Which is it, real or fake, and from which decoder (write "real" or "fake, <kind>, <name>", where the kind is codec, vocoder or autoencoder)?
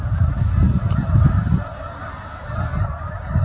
fake, vocoder, BigVGAN v2